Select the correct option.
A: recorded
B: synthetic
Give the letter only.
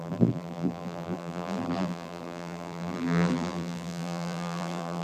B